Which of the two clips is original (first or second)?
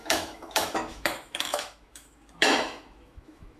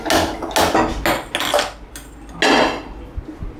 second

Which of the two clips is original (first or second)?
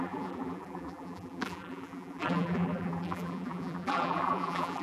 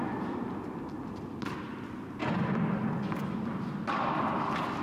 second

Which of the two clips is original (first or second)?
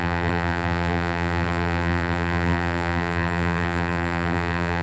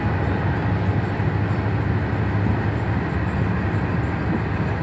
second